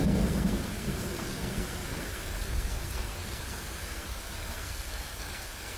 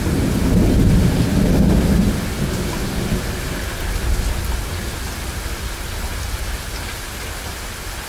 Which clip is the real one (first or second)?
second